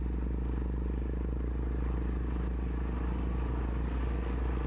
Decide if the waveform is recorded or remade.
recorded